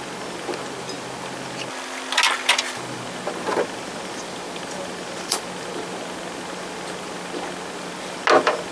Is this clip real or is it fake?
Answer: real